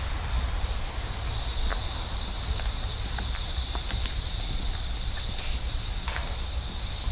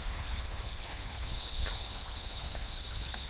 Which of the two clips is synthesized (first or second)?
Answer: second